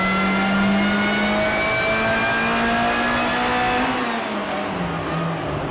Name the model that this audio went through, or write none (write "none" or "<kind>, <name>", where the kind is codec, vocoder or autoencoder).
none